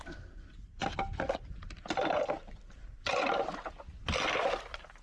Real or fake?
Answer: real